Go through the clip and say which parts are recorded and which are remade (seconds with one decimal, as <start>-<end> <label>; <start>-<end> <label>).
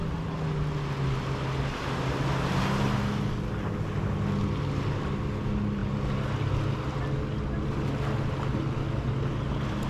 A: 0.0-9.9 recorded